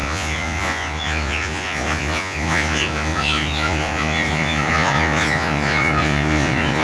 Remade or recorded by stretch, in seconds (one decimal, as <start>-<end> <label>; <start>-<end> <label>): 0.0-6.8 remade